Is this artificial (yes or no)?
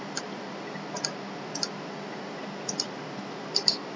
no